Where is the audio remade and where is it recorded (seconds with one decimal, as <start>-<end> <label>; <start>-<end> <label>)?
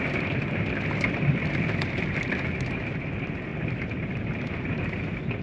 0.0-5.4 recorded